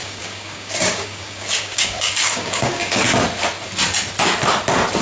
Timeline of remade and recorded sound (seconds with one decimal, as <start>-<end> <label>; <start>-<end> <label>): 0.0-3.0 remade; 3.0-5.0 recorded